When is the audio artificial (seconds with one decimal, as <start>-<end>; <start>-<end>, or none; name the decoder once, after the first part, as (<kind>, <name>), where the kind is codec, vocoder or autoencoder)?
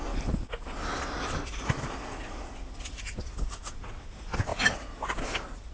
none